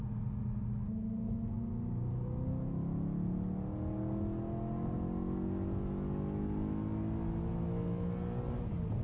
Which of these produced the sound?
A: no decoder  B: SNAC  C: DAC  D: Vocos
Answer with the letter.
A